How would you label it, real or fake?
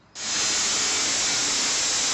real